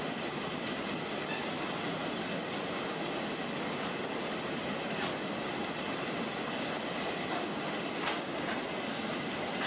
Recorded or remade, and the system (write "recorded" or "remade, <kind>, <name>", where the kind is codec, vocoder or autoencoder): recorded